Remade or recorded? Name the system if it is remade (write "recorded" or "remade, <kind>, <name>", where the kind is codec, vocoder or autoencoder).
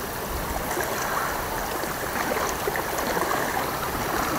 recorded